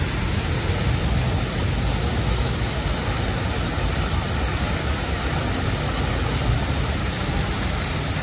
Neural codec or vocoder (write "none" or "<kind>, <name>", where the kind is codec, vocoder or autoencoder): none